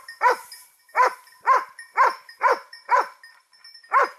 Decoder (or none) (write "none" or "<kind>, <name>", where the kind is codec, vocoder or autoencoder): vocoder, BigVGAN v2